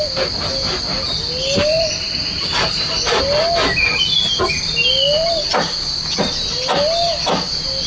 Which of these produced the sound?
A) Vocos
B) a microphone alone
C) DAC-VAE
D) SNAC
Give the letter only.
B